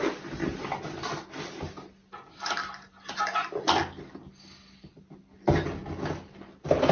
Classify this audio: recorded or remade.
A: recorded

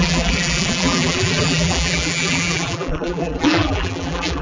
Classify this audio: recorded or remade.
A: remade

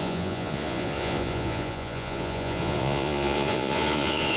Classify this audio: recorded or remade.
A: remade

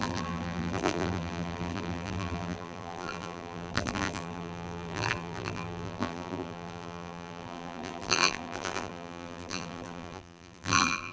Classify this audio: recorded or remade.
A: remade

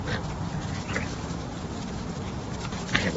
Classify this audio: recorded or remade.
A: recorded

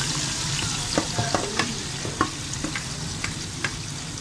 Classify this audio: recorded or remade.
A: recorded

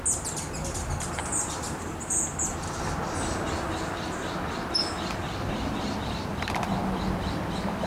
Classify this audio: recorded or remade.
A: recorded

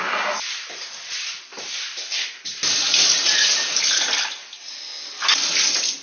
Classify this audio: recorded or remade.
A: recorded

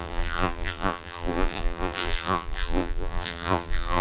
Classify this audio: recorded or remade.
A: remade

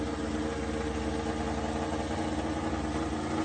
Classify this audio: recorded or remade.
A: recorded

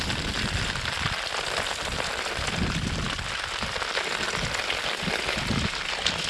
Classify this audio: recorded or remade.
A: recorded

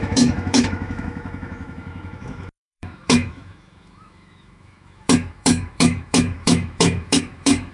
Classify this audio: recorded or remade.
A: remade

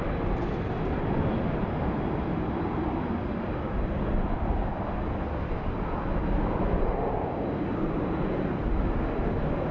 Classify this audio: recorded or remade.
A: recorded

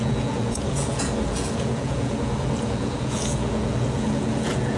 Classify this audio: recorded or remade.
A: remade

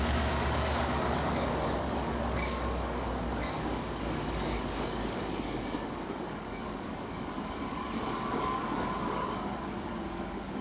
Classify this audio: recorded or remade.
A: remade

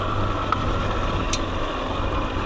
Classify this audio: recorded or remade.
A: recorded